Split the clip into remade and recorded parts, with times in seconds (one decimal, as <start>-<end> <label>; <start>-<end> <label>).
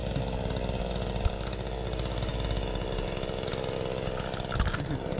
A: 0.0-5.2 recorded